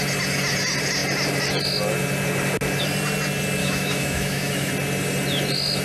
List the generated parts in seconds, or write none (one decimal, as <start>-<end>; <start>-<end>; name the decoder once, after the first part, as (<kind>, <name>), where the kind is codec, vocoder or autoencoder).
3.6-4.7 (autoencoder, DAC-VAE)

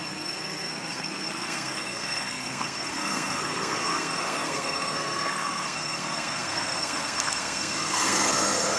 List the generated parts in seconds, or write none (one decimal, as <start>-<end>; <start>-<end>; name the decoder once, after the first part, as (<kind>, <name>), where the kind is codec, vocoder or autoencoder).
0.0-8.8 (codec, SNAC)

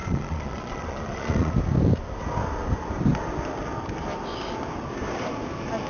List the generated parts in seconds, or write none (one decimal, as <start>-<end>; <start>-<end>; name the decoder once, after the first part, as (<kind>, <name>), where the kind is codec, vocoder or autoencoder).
0.0-1.5 (vocoder, Vocos)

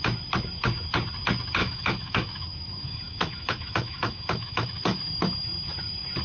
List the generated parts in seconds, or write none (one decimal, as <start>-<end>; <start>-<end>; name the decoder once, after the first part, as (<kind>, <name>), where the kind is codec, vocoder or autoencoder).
1.6-5.0 (autoencoder, DAC-VAE)

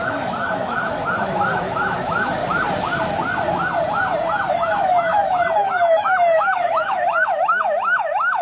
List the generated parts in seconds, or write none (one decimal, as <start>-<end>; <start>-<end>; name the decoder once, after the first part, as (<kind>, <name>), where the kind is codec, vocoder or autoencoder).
0.0-2.4 (autoencoder, DAC-VAE); 4.5-5.2; 5.7-8.4

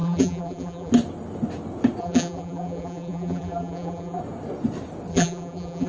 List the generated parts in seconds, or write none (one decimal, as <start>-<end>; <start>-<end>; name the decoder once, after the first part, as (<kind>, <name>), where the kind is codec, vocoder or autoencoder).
0.0-0.9 (vocoder, BigVGAN v2); 2.0-4.2; 5.1-5.9